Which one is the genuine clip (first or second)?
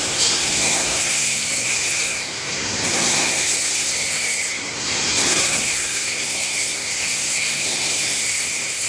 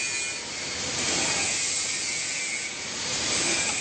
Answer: second